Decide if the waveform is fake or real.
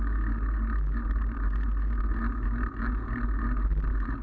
real